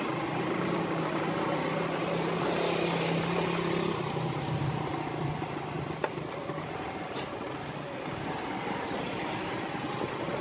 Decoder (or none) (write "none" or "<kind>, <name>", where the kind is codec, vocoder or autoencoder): none